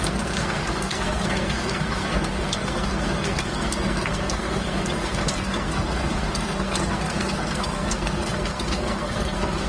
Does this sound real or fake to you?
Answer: fake